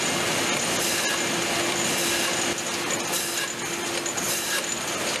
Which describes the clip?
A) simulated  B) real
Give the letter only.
B